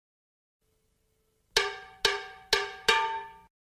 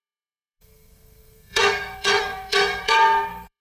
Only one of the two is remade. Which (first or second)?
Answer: second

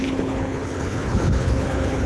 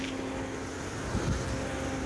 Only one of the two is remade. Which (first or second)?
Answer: first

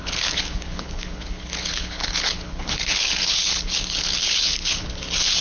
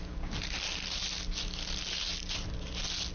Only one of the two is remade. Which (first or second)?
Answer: first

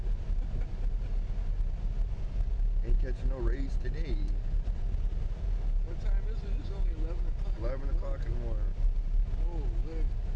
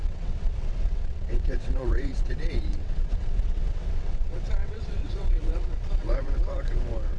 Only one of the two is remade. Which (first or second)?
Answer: second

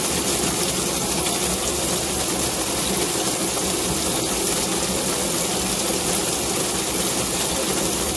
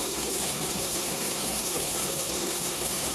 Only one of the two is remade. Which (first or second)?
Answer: second